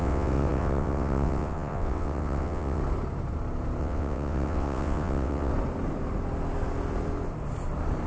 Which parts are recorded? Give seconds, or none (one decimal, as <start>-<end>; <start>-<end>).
2.8-3.8; 5.5-8.1